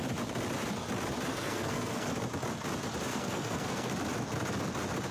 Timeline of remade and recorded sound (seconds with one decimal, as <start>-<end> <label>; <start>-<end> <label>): 0.0-1.3 recorded; 1.3-2.1 remade; 2.1-3.1 recorded; 3.1-3.9 remade; 3.9-5.1 recorded